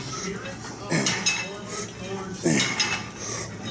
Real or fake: real